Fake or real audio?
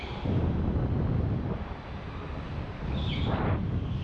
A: real